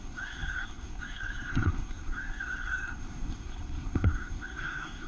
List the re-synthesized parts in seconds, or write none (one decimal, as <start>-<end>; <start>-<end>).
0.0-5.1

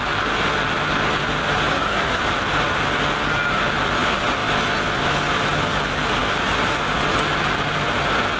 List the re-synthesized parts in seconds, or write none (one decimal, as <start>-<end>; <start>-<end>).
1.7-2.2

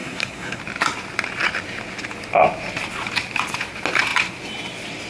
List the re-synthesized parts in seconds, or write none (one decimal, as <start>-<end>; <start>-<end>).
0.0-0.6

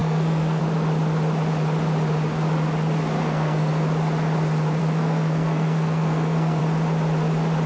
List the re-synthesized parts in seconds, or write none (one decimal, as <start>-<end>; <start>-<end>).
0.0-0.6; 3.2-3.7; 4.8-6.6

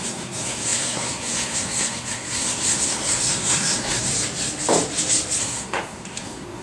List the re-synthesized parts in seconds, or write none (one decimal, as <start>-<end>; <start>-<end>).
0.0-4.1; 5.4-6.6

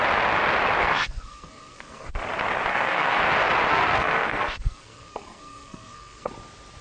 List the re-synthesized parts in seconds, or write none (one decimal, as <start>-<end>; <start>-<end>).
0.8-2.1; 2.7-3.2; 3.7-6.3

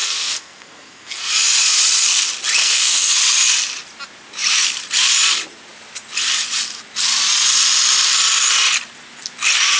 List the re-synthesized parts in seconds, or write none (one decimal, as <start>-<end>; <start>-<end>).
0.0-1.3; 2.6-3.2

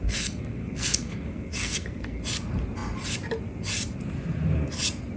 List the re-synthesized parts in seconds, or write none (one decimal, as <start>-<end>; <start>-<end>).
0.0-2.2